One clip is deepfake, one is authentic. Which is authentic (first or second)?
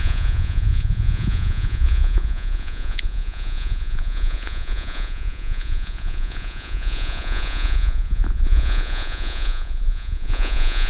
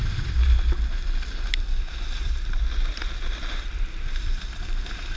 second